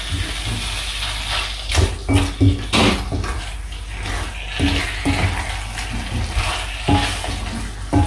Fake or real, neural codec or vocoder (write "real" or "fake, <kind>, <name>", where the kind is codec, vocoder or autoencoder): real